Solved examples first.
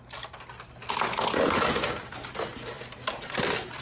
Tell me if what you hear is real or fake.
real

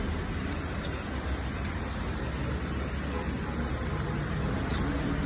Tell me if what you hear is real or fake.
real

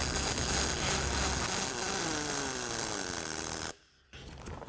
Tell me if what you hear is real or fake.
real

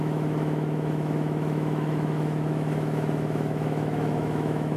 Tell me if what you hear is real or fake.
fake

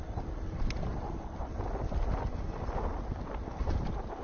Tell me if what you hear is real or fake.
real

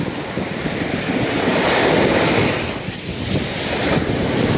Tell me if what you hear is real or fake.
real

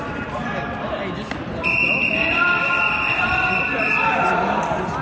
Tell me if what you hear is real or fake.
real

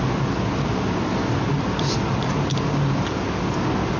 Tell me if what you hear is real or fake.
real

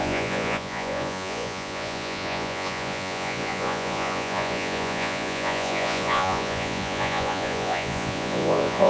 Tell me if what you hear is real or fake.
fake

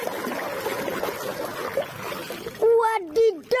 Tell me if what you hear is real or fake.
real